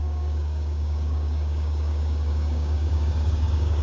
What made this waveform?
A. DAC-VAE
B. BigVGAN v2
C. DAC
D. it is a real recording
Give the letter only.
C